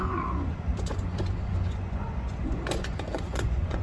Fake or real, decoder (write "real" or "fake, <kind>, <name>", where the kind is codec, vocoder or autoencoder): fake, vocoder, Vocos